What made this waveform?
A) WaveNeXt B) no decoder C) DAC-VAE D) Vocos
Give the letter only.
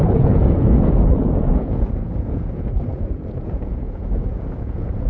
D